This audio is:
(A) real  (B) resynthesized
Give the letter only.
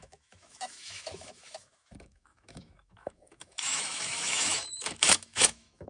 B